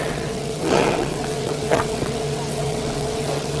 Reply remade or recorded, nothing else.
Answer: remade